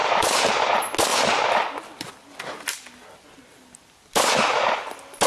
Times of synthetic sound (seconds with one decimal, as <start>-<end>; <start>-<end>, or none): 0.0-0.5